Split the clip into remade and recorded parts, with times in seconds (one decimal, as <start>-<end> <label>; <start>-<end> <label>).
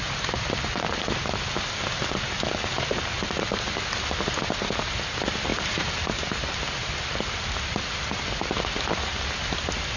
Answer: 0.0-5.5 recorded; 5.5-6.1 remade; 6.1-10.0 recorded